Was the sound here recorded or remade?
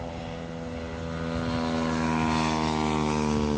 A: recorded